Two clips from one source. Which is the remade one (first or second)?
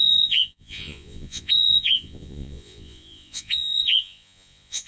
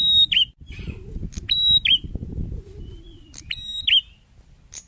first